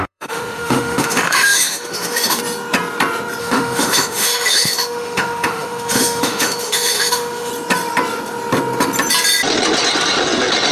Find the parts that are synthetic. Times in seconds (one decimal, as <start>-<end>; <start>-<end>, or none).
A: 0.0-2.4; 3.4-7.5